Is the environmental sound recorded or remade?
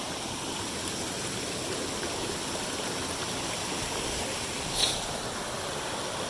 recorded